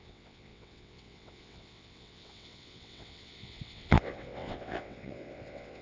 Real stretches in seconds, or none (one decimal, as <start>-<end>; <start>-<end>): none